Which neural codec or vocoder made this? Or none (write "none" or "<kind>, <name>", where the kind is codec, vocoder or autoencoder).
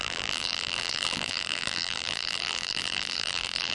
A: vocoder, BigVGAN v2